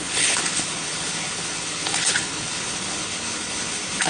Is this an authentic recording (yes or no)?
no